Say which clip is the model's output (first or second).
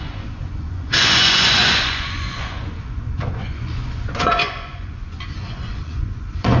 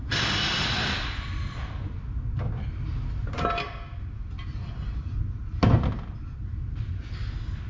first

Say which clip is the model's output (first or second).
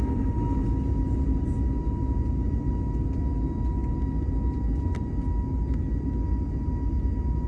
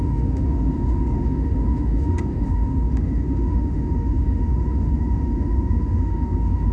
second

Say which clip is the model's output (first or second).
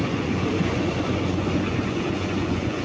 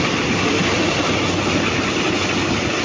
first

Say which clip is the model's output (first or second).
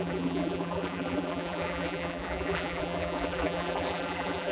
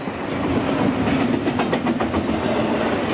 first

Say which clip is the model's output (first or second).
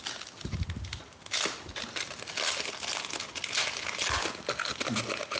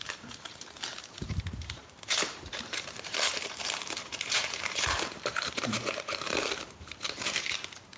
second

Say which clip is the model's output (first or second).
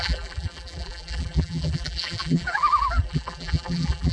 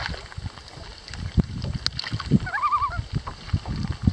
first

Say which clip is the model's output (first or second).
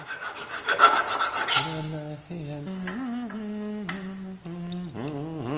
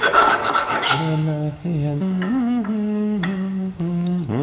second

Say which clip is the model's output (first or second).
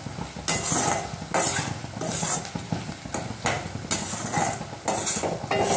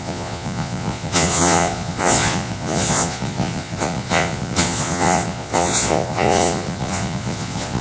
second